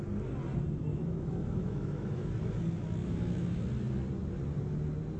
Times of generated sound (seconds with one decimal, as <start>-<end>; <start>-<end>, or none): 0.9-2.3; 3.0-3.6